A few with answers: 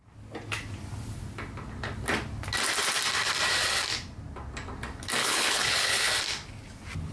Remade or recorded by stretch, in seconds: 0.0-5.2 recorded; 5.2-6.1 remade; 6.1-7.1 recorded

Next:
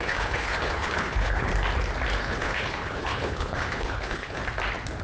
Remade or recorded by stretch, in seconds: 0.0-1.5 remade; 1.5-2.2 recorded; 2.2-4.4 remade; 4.4-5.0 recorded

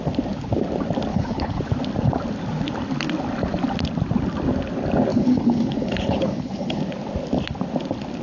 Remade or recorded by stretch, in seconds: 0.0-1.1 recorded; 1.1-1.6 remade; 1.6-5.1 recorded; 5.1-6.8 remade; 6.8-8.2 recorded

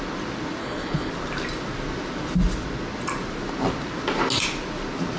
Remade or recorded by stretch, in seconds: 0.0-0.6 recorded; 0.6-1.1 remade; 1.1-5.2 recorded

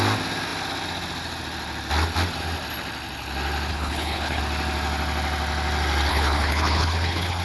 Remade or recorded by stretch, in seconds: 0.0-3.7 recorded; 3.7-4.4 remade; 4.4-6.1 recorded; 6.1-7.4 remade